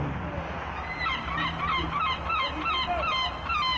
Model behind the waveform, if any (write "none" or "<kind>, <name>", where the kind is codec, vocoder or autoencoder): none